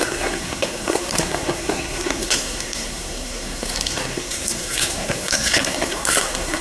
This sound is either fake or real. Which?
fake